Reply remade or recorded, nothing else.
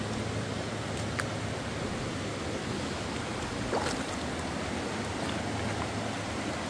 recorded